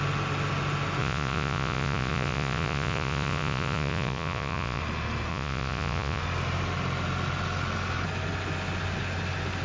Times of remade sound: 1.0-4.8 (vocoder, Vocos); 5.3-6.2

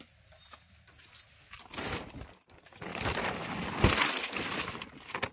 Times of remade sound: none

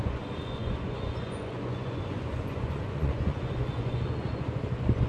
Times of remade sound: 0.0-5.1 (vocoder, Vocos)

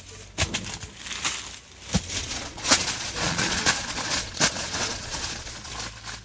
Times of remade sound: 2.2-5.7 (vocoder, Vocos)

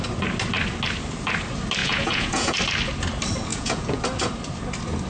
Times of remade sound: 1.8-2.6 (vocoder, Vocos); 3.5-4.0